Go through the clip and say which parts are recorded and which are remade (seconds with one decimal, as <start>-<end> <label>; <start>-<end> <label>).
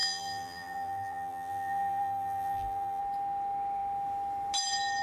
0.0-3.0 remade; 3.0-5.0 recorded